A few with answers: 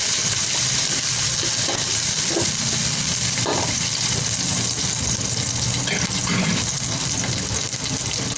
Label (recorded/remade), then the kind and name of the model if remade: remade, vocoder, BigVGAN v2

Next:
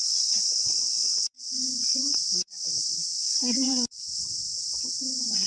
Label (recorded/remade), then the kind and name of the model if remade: remade, vocoder, WaveNeXt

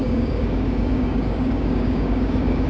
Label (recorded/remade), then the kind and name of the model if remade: remade, codec, DAC